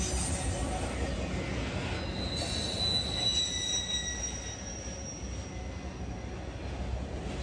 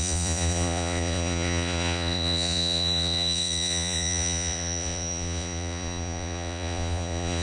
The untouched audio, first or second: first